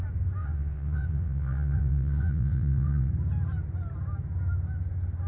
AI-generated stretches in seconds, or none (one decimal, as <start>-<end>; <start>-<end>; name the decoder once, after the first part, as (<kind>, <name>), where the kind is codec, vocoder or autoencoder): 0.4-3.1 (vocoder, WaveNeXt)